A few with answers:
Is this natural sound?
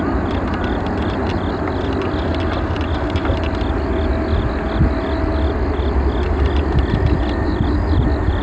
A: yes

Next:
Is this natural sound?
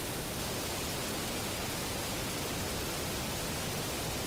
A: yes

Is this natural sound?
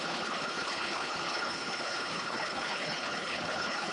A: no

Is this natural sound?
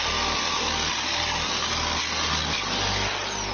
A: yes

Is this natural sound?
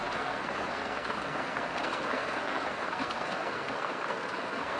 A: no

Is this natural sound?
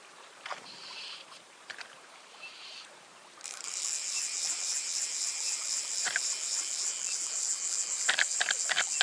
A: no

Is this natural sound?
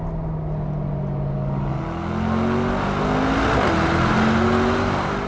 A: yes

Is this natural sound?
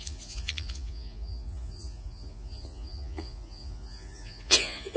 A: no